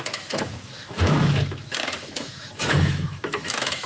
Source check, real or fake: fake